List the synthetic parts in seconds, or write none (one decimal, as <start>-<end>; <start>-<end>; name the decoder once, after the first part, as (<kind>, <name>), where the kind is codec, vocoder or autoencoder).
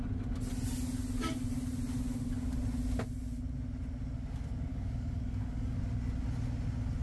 4.7-5.8 (codec, DAC)